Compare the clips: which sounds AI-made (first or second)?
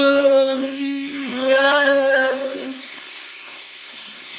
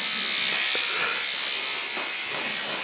first